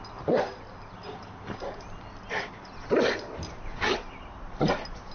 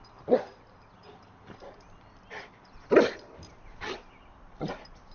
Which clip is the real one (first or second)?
first